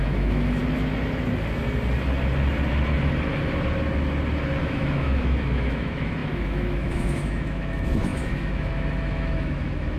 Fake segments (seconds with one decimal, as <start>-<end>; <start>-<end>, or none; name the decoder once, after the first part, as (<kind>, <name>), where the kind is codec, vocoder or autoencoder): 0.0-0.6 (autoencoder, DAC-VAE); 4.6-10.0